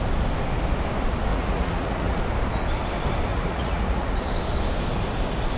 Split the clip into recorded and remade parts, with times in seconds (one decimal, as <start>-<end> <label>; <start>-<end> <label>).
0.0-1.3 recorded; 1.3-2.2 remade; 2.2-3.3 recorded; 3.3-4.3 remade; 4.3-5.6 recorded